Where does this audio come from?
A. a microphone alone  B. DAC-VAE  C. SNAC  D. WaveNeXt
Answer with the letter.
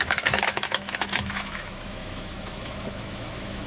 B